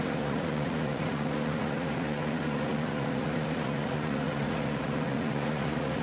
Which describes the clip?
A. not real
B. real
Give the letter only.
A